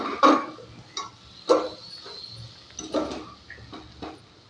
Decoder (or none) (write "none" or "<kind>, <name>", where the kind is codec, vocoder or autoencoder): none